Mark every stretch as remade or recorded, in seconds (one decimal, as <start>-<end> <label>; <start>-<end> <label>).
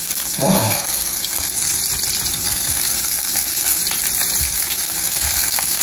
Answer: 0.0-1.8 remade; 1.8-2.3 recorded; 2.3-3.8 remade; 3.8-4.4 recorded; 4.4-5.8 remade